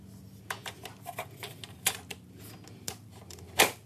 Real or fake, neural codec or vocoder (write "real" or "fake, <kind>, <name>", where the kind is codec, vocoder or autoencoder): real